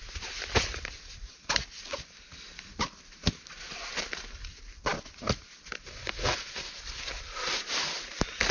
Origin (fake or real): real